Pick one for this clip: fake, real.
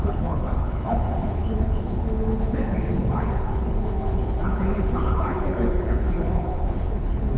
fake